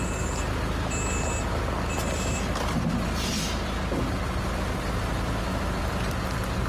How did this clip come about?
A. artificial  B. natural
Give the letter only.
B